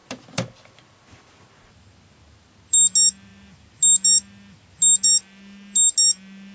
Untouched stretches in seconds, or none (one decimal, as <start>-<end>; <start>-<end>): 0.0-6.5